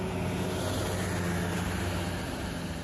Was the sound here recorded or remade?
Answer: recorded